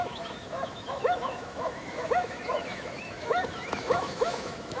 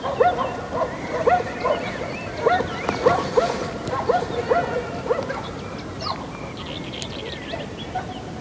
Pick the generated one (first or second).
first